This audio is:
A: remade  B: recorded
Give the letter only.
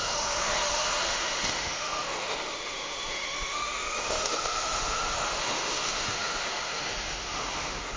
A